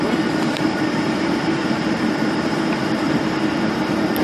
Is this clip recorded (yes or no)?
no